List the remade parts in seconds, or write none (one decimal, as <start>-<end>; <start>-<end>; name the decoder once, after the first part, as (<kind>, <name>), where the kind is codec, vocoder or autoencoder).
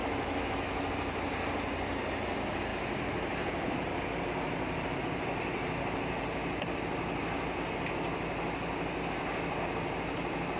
0.0-0.9 (autoencoder, DAC-VAE)